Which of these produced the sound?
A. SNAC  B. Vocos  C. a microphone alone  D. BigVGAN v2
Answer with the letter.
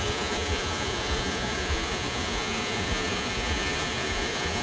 B